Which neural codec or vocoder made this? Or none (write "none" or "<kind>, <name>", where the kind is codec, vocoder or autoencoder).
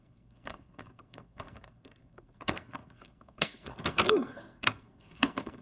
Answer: codec, SNAC